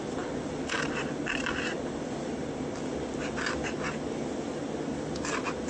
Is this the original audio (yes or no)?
yes